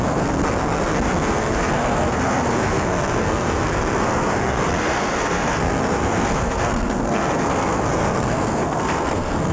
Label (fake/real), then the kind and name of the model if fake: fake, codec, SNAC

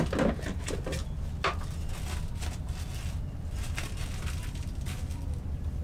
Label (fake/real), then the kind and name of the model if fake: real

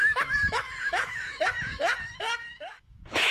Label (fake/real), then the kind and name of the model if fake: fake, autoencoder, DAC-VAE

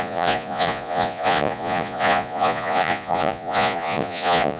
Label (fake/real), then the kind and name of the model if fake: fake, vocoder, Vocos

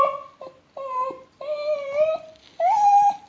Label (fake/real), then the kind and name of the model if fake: real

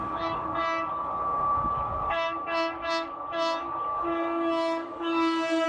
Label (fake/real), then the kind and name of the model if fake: fake, codec, DAC